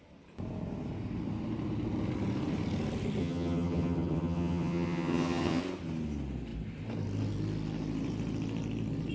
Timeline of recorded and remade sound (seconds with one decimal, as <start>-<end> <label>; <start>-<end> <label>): 0.0-3.2 recorded; 3.2-5.6 remade; 5.6-9.1 recorded

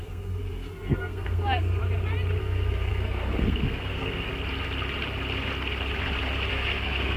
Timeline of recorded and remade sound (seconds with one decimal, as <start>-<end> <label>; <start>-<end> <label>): 0.0-1.8 remade; 1.8-2.4 recorded; 2.4-4.3 remade; 4.3-6.5 recorded; 6.5-7.2 remade

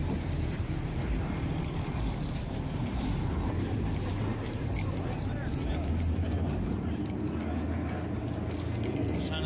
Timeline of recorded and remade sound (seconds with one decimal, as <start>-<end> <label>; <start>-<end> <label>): 0.0-3.8 remade; 3.8-5.4 recorded; 5.4-7.3 remade; 7.3-9.5 recorded

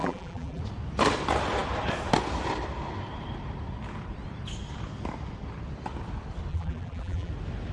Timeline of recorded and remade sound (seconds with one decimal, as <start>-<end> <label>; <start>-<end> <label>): 0.0-0.6 remade; 0.6-6.5 recorded; 6.5-7.3 remade; 7.3-7.7 recorded

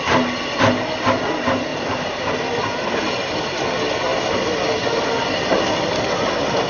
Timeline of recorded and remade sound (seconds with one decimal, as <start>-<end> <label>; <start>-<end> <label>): 0.0-1.7 recorded; 1.7-3.6 remade; 3.6-6.7 recorded

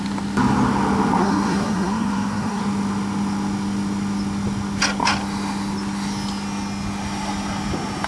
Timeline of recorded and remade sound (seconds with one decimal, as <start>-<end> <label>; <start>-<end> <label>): 0.0-1.2 recorded; 1.2-2.6 remade; 2.6-8.1 recorded

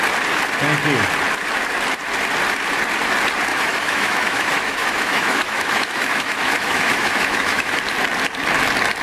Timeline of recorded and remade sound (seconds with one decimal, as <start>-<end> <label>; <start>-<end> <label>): 0.0-3.5 recorded; 3.5-7.8 remade; 7.8-9.0 recorded

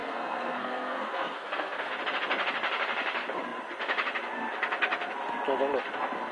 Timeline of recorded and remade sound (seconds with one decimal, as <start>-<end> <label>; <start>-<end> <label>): 0.0-1.9 remade; 1.9-6.3 recorded